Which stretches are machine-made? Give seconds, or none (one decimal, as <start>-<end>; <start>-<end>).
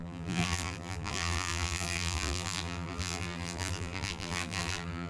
0.0-5.1